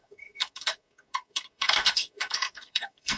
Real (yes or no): no